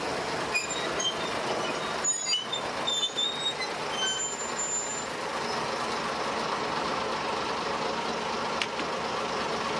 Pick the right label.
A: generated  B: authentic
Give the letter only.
B